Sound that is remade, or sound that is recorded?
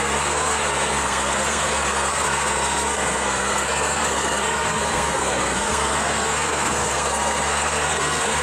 remade